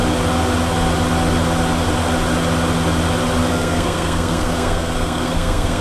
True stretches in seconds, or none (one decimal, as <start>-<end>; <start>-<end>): 0.0-3.5